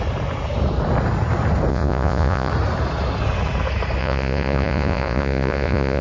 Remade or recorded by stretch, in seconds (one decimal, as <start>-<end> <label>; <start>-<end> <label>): 0.0-1.7 recorded; 1.7-2.5 remade; 2.5-4.0 recorded; 4.0-6.0 remade